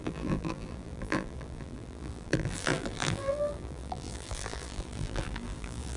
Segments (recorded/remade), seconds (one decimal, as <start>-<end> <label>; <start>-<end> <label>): 0.0-6.0 remade